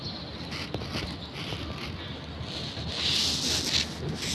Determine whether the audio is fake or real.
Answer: real